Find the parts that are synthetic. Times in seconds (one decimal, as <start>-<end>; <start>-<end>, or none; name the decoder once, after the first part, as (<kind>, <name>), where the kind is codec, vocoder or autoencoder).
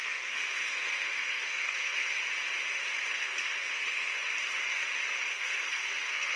0.0-2.2 (codec, SNAC); 3.1-4.2; 5.3-6.4